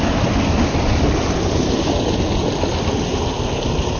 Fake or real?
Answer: real